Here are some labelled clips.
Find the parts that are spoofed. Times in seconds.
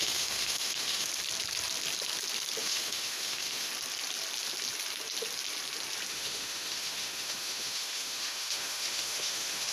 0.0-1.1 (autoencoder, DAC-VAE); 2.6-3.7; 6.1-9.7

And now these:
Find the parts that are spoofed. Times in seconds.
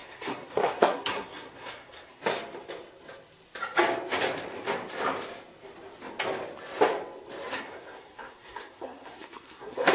0.0-2.2 (codec, SNAC); 7.5-9.9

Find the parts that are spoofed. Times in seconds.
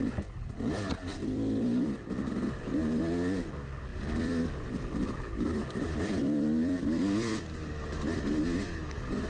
1.2-2.1 (vocoder, BigVGAN v2); 3.9-7.4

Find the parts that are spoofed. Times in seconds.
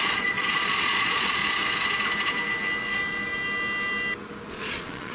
0.0-1.4 (vocoder, Vocos); 4.5-5.1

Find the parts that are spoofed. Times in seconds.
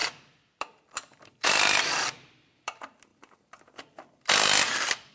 0.6-5.1 (vocoder, BigVGAN v2)